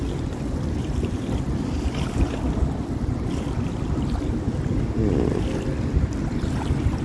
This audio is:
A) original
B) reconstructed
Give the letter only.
A